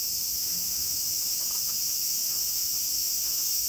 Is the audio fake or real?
fake